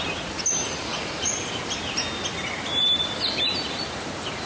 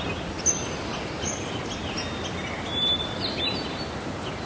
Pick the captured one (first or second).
second